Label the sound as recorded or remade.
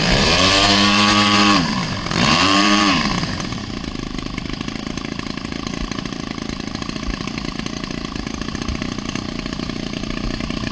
remade